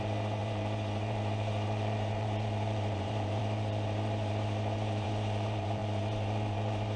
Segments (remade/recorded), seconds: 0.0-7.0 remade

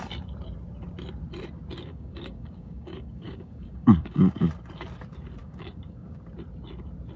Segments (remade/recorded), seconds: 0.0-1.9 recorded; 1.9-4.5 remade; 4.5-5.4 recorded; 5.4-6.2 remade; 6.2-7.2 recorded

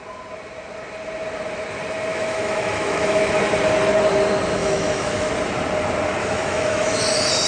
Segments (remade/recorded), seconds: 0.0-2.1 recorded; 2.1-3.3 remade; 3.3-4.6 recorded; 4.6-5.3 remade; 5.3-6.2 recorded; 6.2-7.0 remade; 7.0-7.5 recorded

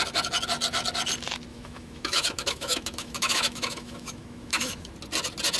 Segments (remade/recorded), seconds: 0.0-1.5 recorded; 1.5-4.9 remade; 4.9-5.6 recorded

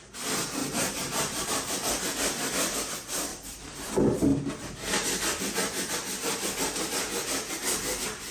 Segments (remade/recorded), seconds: 0.0-0.6 recorded; 0.6-2.0 remade; 2.0-3.3 recorded; 3.3-3.9 remade; 3.9-8.3 recorded

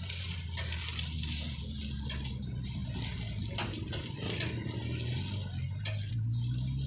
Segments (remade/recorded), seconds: 0.0-6.9 recorded